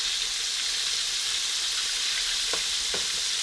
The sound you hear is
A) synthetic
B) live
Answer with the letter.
B